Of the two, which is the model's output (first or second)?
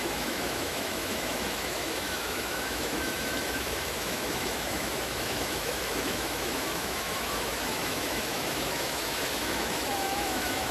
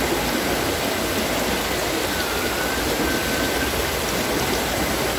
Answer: first